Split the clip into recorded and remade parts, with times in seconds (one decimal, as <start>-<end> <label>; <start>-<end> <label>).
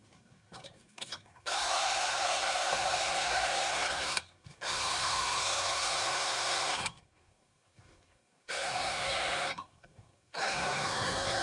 0.0-11.4 remade